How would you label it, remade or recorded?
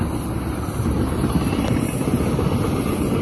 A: recorded